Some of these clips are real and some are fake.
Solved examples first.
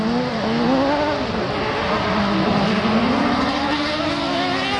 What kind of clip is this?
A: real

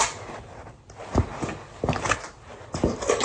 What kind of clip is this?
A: real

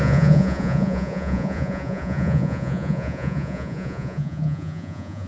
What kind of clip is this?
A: fake